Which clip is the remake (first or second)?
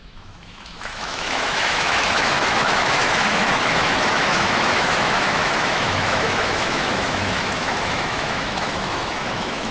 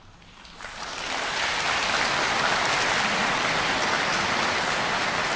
first